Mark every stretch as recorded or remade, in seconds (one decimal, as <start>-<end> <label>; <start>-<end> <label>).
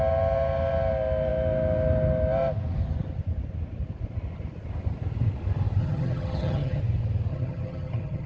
0.0-5.8 recorded; 5.8-6.8 remade; 6.8-7.3 recorded; 7.3-8.3 remade